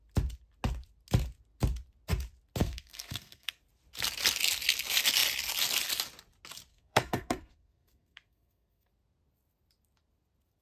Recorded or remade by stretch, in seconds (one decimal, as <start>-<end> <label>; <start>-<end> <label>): 0.0-2.6 recorded; 2.6-3.6 remade; 3.6-6.7 recorded; 6.7-8.9 remade; 8.9-10.6 recorded